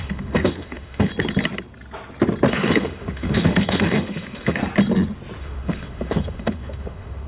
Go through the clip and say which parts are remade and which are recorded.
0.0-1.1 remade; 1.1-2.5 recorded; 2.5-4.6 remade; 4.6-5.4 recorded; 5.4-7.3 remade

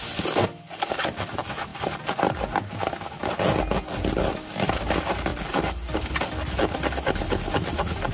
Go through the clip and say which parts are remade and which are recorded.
0.0-8.1 recorded

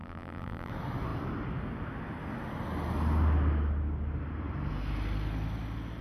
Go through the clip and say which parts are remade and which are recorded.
0.0-0.7 remade; 0.7-6.0 recorded

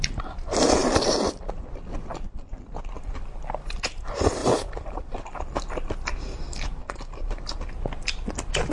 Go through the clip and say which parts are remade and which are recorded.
0.0-2.1 recorded; 2.1-2.9 remade; 2.9-4.4 recorded; 4.4-5.0 remade; 5.0-8.7 recorded